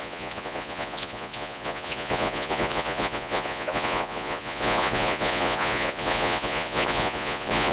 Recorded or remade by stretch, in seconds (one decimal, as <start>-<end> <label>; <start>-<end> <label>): 0.0-7.7 remade